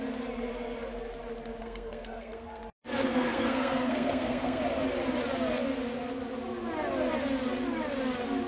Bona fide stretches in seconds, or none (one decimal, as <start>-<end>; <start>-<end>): 0.0-1.6; 2.6-3.0; 4.6-8.5